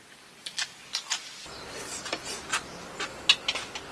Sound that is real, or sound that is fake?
real